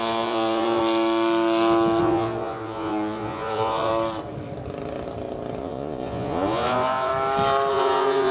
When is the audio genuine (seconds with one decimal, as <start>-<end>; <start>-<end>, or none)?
0.8-2.0; 3.9-5.6; 7.1-7.7